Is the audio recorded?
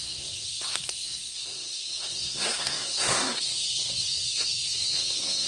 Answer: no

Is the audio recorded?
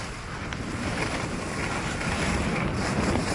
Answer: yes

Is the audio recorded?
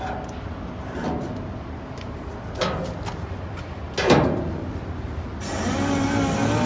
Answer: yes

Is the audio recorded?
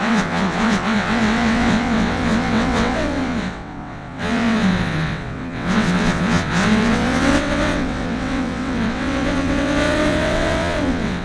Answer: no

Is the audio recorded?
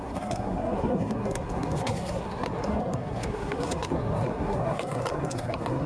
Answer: no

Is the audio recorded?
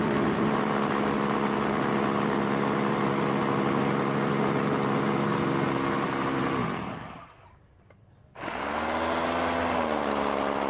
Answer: yes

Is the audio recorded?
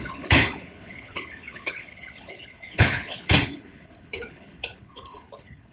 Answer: no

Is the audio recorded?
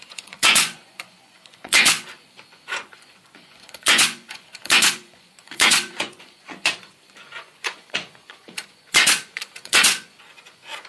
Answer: no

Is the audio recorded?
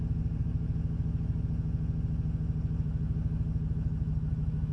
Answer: yes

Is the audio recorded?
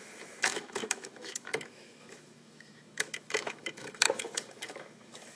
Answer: no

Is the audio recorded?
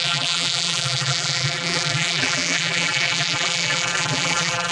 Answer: no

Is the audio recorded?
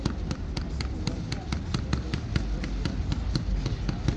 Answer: yes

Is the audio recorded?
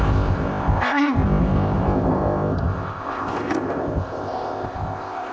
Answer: no